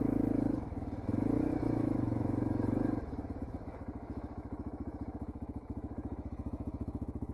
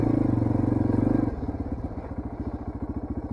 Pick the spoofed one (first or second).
first